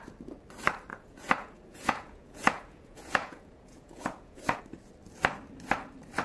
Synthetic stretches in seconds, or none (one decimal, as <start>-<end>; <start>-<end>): 0.9-4.6